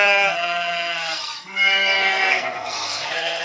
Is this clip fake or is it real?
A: fake